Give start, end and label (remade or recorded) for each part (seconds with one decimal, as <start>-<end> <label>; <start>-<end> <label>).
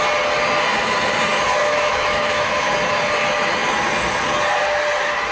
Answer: 0.0-1.6 recorded; 1.6-2.7 remade; 2.7-5.3 recorded